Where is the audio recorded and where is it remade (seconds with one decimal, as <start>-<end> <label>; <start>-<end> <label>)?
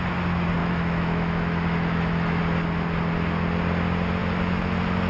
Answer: 0.0-0.6 recorded; 0.6-2.4 remade; 2.4-5.1 recorded